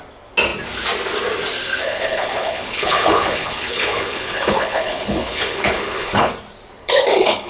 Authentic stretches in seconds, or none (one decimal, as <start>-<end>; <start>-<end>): 0.0-1.8; 6.3-6.8